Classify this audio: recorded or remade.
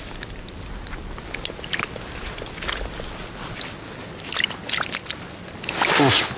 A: recorded